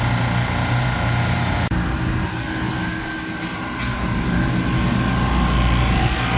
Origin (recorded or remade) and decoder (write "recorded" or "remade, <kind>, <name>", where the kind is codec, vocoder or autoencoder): recorded